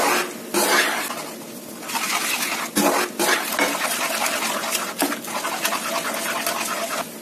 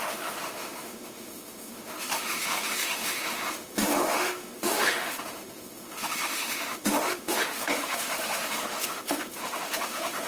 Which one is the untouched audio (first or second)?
first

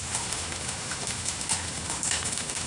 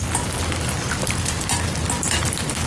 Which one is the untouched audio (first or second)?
second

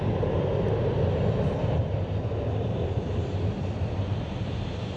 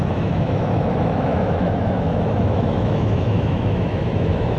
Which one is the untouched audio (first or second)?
first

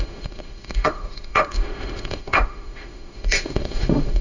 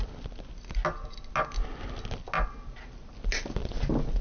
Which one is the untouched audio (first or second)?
second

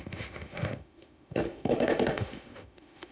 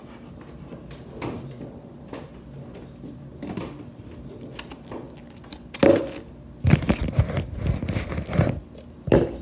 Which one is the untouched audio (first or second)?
second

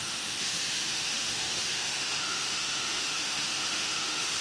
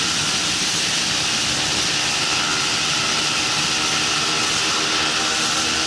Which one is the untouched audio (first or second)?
second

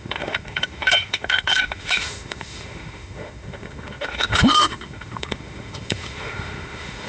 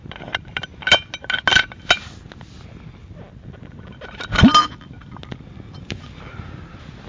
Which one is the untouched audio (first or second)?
second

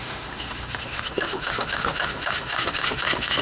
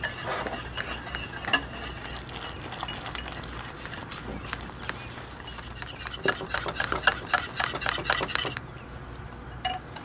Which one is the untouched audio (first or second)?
second